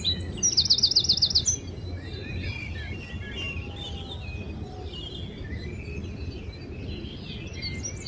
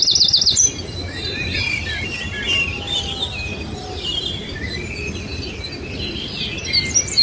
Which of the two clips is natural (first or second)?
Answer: first